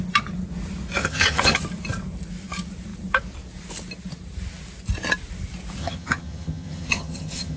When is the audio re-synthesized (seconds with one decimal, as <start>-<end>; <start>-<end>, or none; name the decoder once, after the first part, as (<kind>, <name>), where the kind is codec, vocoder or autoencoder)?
1.0-1.6 (vocoder, HiFi-GAN); 5.8-7.6

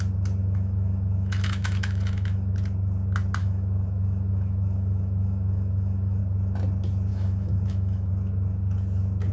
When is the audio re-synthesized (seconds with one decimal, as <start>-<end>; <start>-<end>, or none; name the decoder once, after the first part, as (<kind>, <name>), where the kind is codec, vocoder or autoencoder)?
0.4-2.5 (autoencoder, DAC-VAE); 3.4-6.2; 7.1-8.1

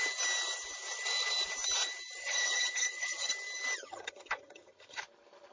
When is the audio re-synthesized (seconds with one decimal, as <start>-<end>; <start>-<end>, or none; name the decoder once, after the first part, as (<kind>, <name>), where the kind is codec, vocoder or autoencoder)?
2.2-3.3 (vocoder, HiFi-GAN); 3.8-5.0

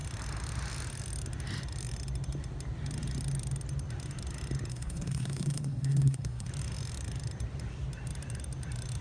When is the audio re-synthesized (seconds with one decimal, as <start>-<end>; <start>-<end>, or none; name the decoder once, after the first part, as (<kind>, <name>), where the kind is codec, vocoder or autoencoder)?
4.7-6.5 (codec, SNAC)

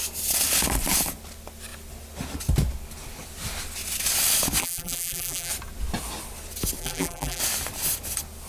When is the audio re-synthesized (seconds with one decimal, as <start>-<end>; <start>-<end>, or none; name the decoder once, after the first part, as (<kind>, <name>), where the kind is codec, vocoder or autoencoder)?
4.6-5.5 (vocoder, BigVGAN v2); 6.8-7.4